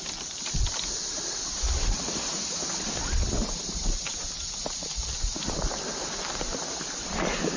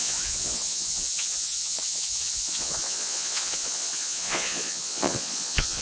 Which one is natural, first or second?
first